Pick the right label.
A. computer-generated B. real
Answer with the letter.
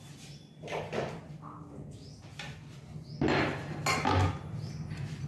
B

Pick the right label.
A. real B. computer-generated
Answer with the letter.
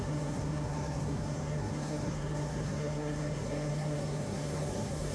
B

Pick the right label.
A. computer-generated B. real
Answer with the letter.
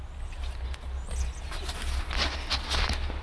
B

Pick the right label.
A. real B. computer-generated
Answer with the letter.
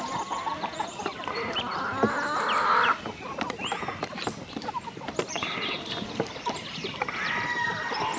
A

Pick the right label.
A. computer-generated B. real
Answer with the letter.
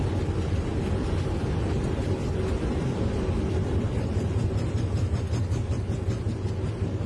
B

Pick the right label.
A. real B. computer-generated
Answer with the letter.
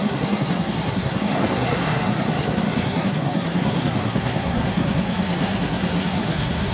B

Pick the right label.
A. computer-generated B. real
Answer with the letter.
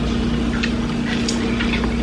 B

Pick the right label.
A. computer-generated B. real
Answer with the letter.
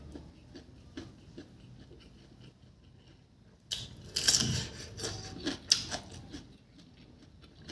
B